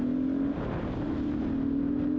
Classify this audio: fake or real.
real